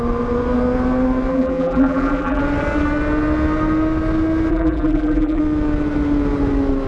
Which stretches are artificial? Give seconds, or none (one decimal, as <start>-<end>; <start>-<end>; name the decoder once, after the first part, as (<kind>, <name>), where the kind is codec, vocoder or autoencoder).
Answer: 1.3-2.4 (vocoder, BigVGAN v2); 4.5-5.4